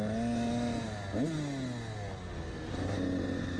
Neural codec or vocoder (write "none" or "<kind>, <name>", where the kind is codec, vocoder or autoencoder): none